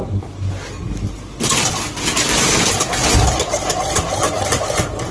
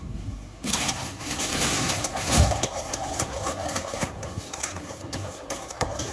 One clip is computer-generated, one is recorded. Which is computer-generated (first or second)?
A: second